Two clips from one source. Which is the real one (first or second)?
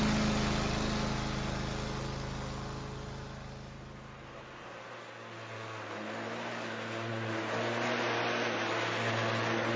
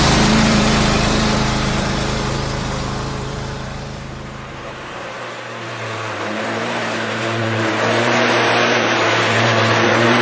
first